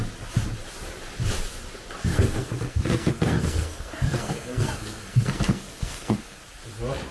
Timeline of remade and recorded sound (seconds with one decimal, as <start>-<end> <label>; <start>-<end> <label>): 0.0-2.1 recorded; 2.1-6.4 remade; 6.4-7.1 recorded